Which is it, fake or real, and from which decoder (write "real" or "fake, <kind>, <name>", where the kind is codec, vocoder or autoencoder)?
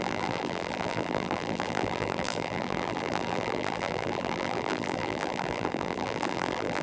fake, vocoder, BigVGAN v2